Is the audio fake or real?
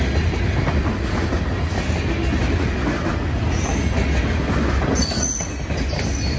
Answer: real